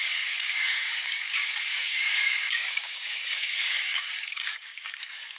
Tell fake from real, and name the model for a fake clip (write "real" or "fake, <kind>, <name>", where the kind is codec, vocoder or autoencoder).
fake, codec, DAC